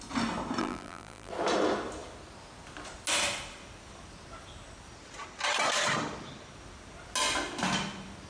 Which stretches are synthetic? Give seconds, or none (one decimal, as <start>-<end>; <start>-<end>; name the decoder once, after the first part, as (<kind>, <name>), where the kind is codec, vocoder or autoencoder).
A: 0.6-1.3 (vocoder, BigVGAN v2)